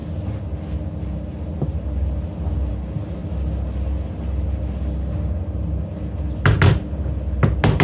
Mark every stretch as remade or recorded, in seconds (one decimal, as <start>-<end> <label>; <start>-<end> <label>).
0.0-7.8 recorded